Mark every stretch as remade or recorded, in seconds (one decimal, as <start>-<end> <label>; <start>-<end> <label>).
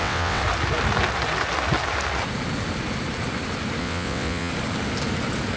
0.0-0.4 remade; 0.4-3.8 recorded; 3.8-4.5 remade; 4.5-5.6 recorded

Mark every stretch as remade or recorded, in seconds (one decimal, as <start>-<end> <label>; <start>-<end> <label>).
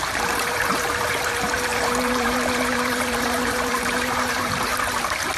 0.0-4.7 remade; 4.7-5.4 recorded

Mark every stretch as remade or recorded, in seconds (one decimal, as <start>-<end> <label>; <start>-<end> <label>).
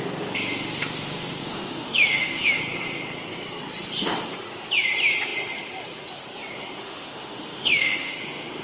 0.0-1.4 recorded; 1.4-2.6 remade; 2.6-6.8 recorded; 6.8-8.1 remade; 8.1-8.6 recorded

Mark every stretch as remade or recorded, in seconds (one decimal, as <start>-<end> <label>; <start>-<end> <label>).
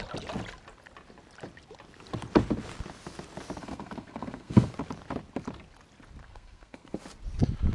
0.0-3.6 recorded; 3.6-4.7 remade; 4.7-6.2 recorded; 6.2-7.0 remade; 7.0-7.7 recorded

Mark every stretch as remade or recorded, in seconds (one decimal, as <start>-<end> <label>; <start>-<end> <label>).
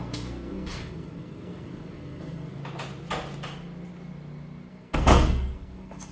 0.0-2.6 remade; 2.6-4.7 recorded; 4.7-6.1 remade